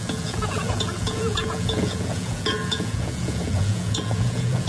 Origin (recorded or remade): remade